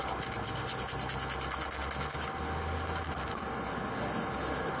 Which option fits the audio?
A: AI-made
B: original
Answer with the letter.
B